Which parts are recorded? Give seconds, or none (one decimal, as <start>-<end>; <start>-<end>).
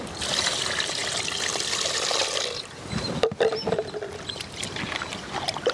0.0-5.7